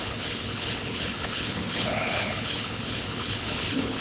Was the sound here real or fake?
fake